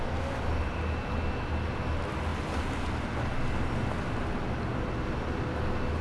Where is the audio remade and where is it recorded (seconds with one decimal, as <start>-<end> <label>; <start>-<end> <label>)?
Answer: 0.0-6.0 recorded